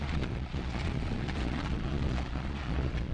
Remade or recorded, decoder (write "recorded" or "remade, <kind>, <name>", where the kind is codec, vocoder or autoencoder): remade, vocoder, Vocos